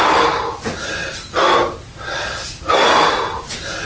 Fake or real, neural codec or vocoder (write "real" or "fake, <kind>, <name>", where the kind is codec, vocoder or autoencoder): real